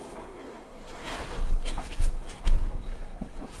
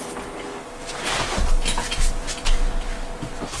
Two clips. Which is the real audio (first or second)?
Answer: second